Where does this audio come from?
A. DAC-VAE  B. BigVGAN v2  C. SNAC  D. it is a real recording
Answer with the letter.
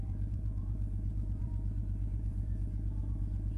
B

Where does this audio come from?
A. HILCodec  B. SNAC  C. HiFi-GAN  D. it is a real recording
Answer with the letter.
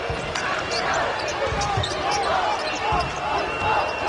D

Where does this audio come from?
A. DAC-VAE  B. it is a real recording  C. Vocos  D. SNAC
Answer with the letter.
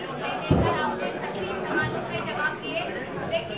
B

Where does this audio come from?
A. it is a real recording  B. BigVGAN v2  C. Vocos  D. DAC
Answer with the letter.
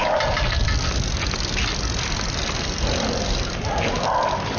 A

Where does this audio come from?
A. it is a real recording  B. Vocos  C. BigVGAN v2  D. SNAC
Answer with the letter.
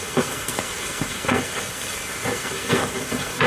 D